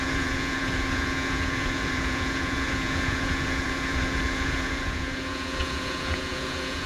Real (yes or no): no